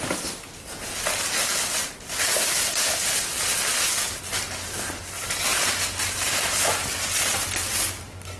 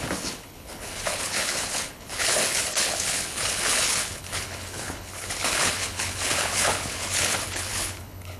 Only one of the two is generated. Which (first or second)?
second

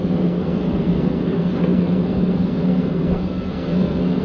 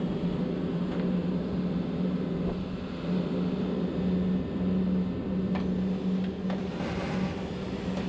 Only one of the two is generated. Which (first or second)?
first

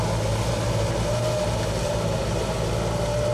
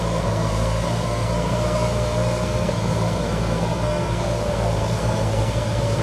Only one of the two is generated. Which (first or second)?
second